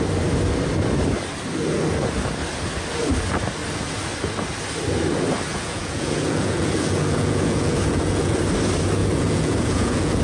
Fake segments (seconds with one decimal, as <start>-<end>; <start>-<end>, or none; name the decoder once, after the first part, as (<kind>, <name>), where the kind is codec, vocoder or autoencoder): 5.5-8.4 (vocoder, Vocos); 9.0-10.2